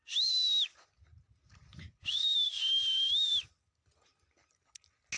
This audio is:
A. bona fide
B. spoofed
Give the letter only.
A